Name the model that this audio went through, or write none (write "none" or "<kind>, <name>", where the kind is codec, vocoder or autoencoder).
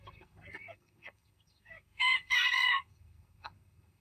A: codec, SNAC